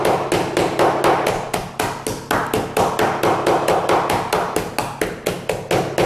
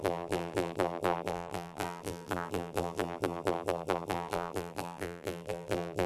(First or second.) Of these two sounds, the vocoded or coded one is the second